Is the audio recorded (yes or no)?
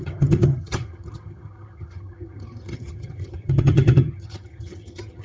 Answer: no